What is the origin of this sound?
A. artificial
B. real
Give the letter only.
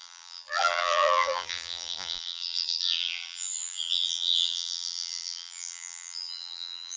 A